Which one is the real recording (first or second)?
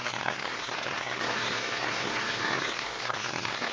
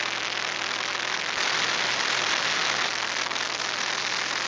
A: second